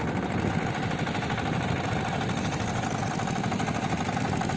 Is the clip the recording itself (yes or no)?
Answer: yes